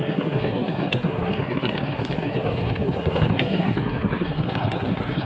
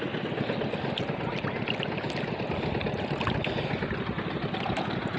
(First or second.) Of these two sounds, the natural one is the second